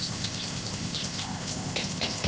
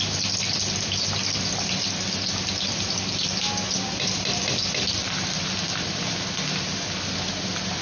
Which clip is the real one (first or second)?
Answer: second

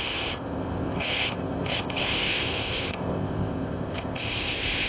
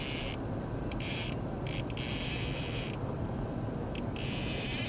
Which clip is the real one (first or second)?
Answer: second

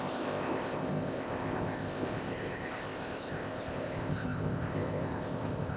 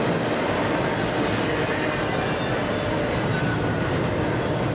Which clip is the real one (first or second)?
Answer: second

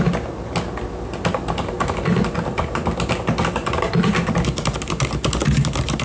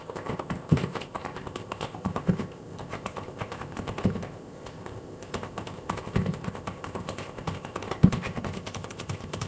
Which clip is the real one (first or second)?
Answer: first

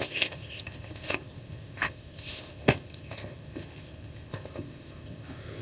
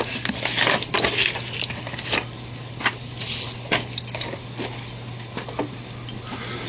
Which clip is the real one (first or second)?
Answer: second